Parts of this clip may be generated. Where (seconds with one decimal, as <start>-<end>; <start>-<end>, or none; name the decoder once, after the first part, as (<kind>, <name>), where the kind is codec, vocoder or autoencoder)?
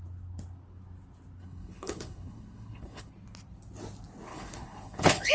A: 1.4-3.1 (codec, HILCodec); 4.3-5.3